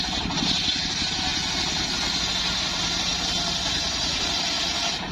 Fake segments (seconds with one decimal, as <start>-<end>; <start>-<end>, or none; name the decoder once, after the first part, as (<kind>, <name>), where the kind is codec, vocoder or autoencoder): none